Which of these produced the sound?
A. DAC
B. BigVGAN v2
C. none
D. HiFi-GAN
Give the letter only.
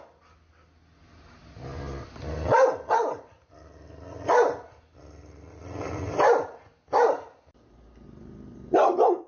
C